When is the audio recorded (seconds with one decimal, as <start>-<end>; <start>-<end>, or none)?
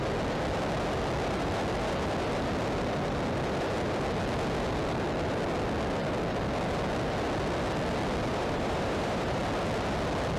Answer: 0.0-8.3; 9.4-10.4